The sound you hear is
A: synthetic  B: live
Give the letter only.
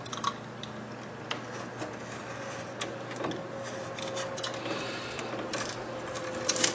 B